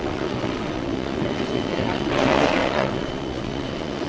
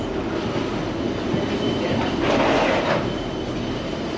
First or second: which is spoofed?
first